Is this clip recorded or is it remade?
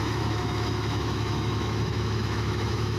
remade